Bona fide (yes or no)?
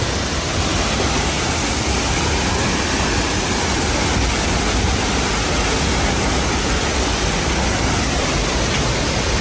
yes